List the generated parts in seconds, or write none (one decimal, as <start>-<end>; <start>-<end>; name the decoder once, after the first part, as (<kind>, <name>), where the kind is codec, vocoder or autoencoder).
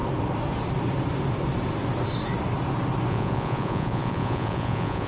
3.1-5.1 (vocoder, Vocos)